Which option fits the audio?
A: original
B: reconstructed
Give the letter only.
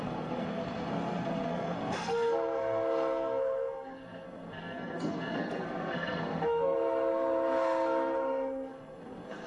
B